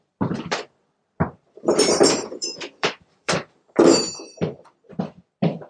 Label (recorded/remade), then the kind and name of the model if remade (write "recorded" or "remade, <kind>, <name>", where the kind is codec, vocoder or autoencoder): remade, vocoder, BigVGAN v2